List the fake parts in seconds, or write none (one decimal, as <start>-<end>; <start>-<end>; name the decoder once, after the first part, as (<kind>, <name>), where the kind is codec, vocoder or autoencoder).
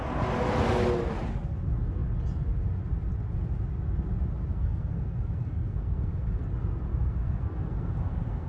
4.5-6.5 (codec, SNAC); 6.9-8.5